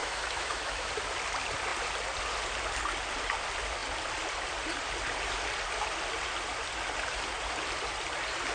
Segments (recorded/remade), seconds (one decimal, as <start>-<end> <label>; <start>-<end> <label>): 0.0-0.9 remade; 0.9-8.5 recorded